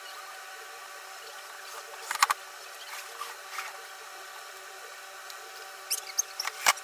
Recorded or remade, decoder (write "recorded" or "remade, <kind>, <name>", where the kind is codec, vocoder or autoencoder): recorded